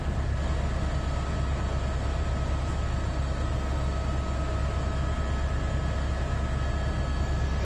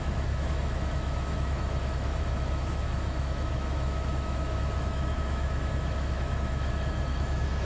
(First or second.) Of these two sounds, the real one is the first